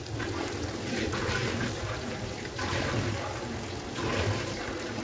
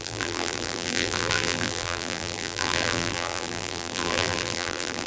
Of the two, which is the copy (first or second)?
second